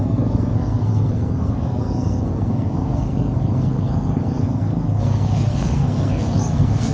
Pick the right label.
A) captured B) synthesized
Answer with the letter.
B